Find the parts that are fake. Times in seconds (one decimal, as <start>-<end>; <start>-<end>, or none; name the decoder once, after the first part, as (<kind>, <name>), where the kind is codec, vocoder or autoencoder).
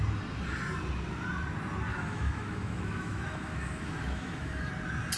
1.9-4.7 (autoencoder, DAC-VAE)